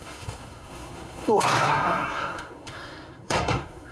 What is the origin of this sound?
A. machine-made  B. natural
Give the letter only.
A